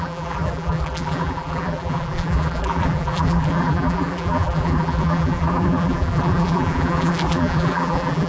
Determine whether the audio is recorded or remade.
remade